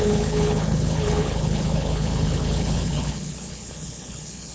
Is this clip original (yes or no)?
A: no